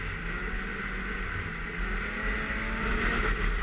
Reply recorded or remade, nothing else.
recorded